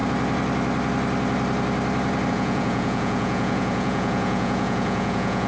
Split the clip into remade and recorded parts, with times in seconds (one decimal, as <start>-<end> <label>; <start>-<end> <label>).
0.0-2.3 recorded; 2.3-5.5 remade

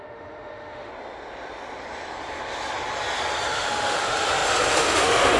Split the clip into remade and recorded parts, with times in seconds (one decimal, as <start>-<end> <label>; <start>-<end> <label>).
0.0-0.9 remade; 0.9-3.5 recorded; 3.5-5.4 remade

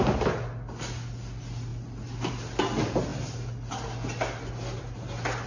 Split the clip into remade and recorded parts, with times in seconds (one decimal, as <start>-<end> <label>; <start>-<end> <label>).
0.0-5.5 recorded

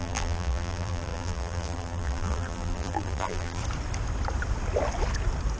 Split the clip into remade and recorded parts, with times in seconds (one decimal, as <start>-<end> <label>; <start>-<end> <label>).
0.0-3.6 remade; 3.6-5.6 recorded

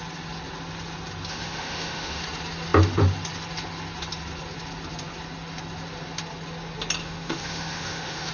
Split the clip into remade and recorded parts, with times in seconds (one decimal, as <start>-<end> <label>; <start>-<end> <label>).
0.0-1.3 recorded; 1.3-2.2 remade; 2.2-7.0 recorded; 7.0-8.3 remade

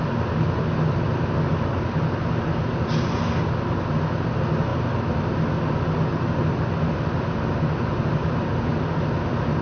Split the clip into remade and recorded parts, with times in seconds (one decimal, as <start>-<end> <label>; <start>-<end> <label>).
0.0-9.6 recorded